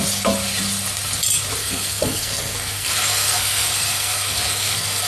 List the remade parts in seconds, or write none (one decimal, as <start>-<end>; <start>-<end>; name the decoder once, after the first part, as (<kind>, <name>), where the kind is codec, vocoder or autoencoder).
1.6-5.1 (codec, SNAC)